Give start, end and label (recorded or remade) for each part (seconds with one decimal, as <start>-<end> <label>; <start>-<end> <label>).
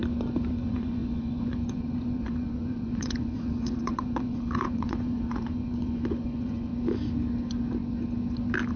0.0-0.5 recorded; 0.5-6.7 remade; 6.7-8.8 recorded